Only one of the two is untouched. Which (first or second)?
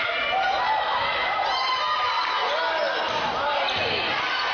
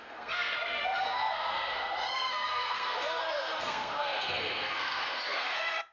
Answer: first